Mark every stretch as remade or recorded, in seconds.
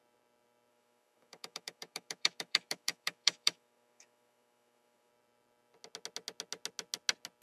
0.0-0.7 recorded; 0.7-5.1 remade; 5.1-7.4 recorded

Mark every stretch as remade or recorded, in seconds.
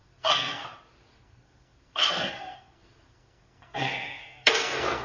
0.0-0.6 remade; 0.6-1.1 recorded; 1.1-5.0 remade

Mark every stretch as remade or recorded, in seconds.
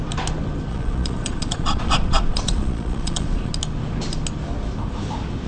0.0-0.7 recorded; 0.7-3.5 remade; 3.5-5.5 recorded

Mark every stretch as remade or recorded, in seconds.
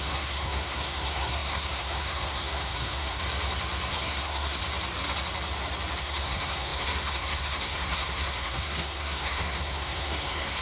0.0-3.2 remade; 3.2-3.9 recorded; 3.9-4.6 remade; 4.6-6.0 recorded; 6.0-10.6 remade